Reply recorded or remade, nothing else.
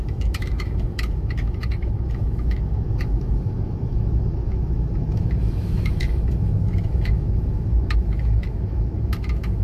remade